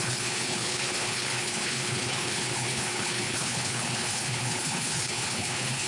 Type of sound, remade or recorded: remade